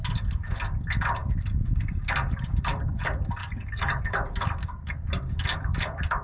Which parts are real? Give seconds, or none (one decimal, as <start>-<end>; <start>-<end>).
0.0-3.4; 4.0-6.2